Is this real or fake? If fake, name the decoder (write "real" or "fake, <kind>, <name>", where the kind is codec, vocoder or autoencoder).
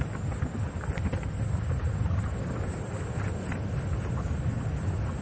real